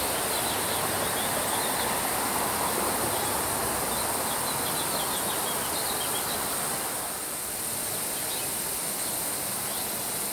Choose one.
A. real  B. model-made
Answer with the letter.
A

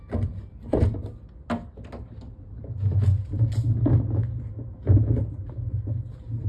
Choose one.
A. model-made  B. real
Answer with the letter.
B